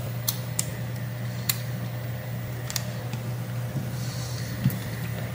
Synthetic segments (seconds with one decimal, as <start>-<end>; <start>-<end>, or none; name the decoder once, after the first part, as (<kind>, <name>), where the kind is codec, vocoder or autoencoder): 0.0-0.7 (vocoder, BigVGAN v2); 3.9-5.3